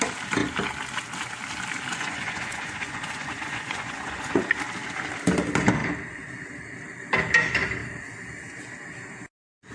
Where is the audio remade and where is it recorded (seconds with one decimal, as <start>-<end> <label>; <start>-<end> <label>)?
0.0-1.9 recorded; 1.9-4.4 remade; 4.4-9.7 recorded